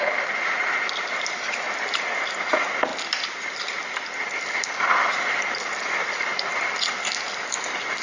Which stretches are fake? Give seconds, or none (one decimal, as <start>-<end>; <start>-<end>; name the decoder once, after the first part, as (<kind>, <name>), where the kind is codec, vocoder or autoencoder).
none